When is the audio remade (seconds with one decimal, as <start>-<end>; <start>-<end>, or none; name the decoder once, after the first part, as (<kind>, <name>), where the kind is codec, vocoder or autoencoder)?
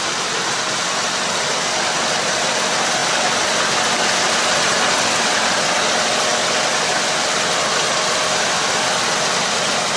none